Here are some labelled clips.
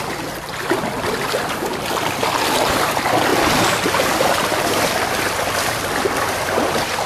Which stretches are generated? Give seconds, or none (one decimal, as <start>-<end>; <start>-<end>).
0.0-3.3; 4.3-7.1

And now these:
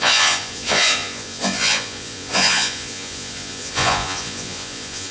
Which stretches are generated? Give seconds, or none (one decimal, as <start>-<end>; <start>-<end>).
0.0-5.1

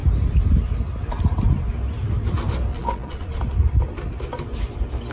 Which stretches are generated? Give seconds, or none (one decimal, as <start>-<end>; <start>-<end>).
2.7-3.4

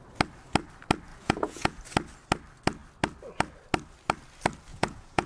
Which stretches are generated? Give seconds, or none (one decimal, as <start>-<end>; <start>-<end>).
1.1-1.8; 4.7-5.3